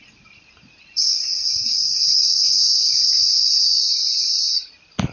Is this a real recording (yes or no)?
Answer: yes